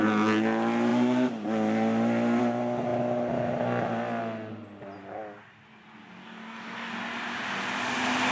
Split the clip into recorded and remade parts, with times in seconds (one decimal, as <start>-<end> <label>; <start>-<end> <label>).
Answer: 0.0-6.2 recorded; 6.2-6.9 remade; 6.9-8.3 recorded

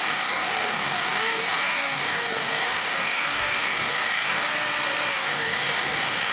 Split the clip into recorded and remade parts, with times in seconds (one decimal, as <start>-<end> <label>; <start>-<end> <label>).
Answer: 0.0-4.5 remade; 4.5-5.1 recorded; 5.1-6.3 remade

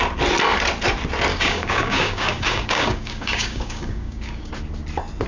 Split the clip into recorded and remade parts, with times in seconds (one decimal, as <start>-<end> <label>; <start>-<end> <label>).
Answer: 0.0-1.3 recorded; 1.3-4.5 remade; 4.5-5.3 recorded

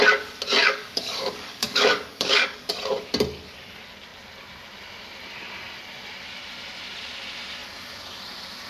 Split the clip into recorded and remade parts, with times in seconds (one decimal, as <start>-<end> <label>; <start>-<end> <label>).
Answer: 0.0-0.6 recorded; 0.6-2.7 remade; 2.7-8.7 recorded

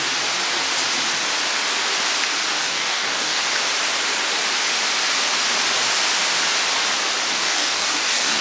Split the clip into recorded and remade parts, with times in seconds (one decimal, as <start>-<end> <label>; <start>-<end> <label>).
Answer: 0.0-2.6 recorded; 2.6-3.4 remade; 3.4-7.3 recorded; 7.3-8.4 remade